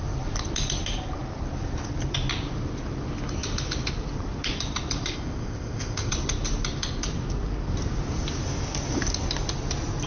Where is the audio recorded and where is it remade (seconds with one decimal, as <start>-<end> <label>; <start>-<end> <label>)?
0.0-5.1 recorded; 5.1-6.1 remade; 6.1-10.1 recorded